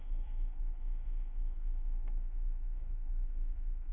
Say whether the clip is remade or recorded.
remade